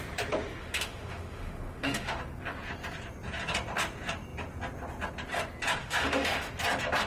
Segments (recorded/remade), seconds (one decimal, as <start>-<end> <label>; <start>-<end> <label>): 0.0-0.6 recorded; 0.6-2.2 remade; 2.2-5.8 recorded; 5.8-6.5 remade; 6.5-7.1 recorded